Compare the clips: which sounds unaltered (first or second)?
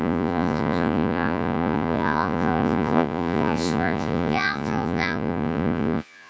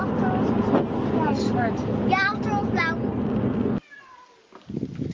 second